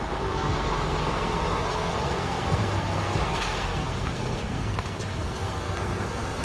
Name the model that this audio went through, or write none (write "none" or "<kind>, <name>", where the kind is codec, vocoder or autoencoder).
codec, SNAC